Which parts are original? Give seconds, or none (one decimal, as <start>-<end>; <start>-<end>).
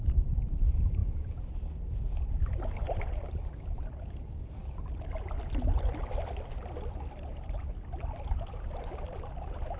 none